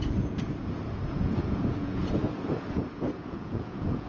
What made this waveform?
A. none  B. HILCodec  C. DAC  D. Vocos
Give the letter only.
D